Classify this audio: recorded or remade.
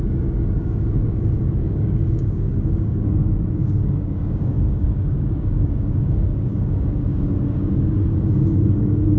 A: remade